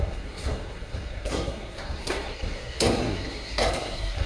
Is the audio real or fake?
fake